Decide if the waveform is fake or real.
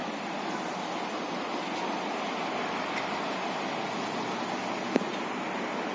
real